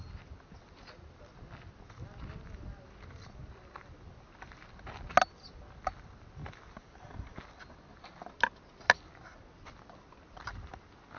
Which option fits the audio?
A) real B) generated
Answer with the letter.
A